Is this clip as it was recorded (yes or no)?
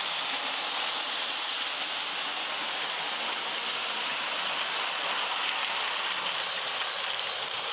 yes